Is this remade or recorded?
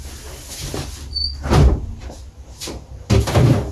recorded